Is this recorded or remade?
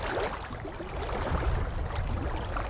recorded